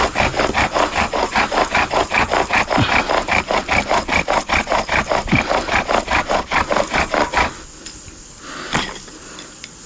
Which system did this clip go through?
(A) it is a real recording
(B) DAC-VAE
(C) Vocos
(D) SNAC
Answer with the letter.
A